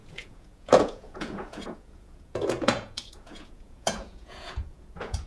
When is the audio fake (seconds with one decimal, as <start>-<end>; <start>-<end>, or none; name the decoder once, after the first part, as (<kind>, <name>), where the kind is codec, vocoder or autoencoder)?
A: 0.0-5.3 (vocoder, Vocos)